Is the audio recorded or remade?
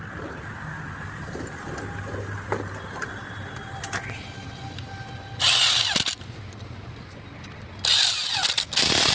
recorded